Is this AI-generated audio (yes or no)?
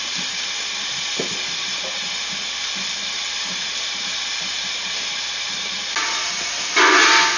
no